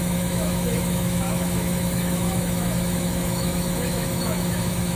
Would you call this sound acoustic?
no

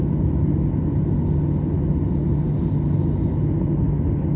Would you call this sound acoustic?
yes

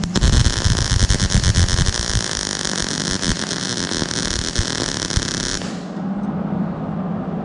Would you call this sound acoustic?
yes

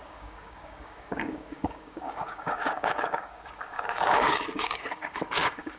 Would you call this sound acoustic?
no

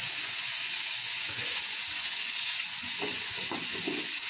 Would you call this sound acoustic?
no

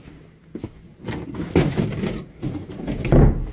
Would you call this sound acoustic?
yes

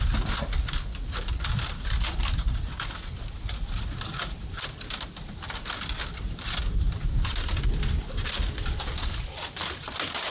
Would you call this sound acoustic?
yes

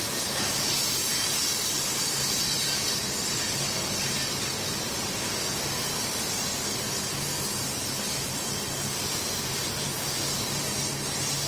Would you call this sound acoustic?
yes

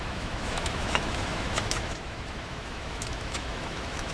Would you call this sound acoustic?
no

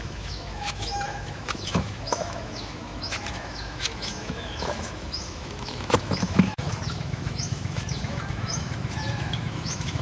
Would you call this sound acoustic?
no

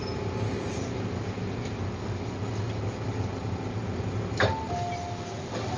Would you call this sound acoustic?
yes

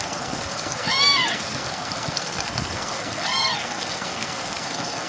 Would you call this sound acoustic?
no